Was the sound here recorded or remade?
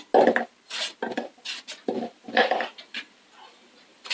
recorded